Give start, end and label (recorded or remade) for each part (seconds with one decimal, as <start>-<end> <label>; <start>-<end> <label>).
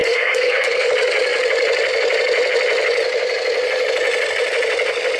0.0-0.9 remade; 0.9-5.2 recorded